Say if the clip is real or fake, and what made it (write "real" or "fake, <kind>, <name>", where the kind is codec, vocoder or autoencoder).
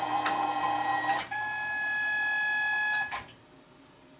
real